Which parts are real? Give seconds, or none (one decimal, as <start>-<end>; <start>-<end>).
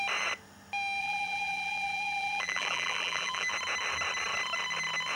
0.0-1.0; 3.5-5.1